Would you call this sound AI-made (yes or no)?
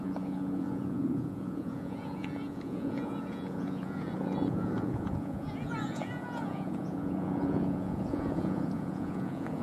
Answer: yes